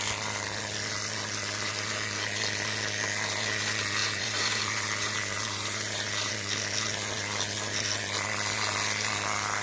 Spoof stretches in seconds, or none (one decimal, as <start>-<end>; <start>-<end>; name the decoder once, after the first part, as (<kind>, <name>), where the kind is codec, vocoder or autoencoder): 4.0-6.3 (vocoder, BigVGAN v2)